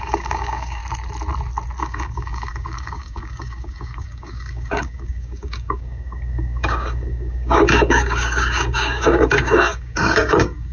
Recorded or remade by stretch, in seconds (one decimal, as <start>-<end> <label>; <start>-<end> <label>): 0.0-0.8 remade; 0.8-1.8 recorded; 1.8-10.7 remade